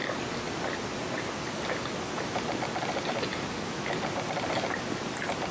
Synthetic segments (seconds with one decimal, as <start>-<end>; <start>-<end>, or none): 0.0-0.9